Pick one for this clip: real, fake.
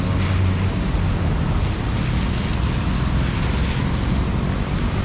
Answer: real